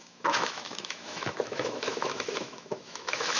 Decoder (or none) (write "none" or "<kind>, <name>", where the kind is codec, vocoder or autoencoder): autoencoder, DAC-VAE